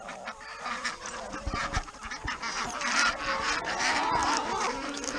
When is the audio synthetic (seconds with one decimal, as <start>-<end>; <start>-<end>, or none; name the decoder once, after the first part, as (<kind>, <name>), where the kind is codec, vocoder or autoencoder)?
none